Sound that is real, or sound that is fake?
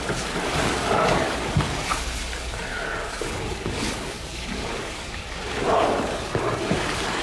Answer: fake